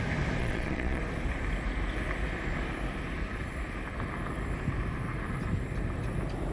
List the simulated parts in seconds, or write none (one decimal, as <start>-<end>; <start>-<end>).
0.4-1.0